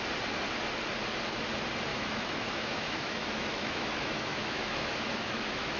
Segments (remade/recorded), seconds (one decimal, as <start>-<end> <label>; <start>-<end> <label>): 0.0-1.9 recorded; 1.9-5.8 remade